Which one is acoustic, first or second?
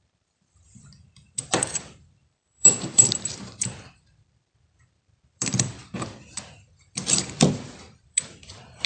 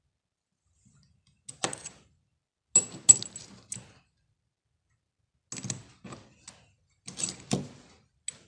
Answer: second